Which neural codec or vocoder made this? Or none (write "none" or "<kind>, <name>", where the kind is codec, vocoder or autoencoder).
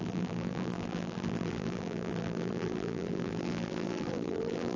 vocoder, BigVGAN v2